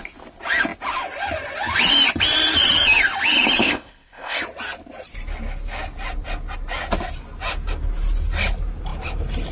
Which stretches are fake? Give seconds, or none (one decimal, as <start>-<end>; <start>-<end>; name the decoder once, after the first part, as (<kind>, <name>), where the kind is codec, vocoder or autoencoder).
3.6-4.4 (codec, ZipCodec)